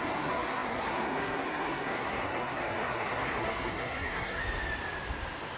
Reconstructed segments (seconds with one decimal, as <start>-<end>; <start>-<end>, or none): 0.0-4.4